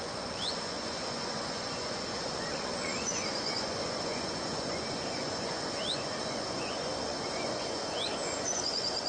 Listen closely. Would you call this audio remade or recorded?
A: remade